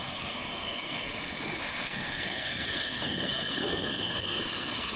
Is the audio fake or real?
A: fake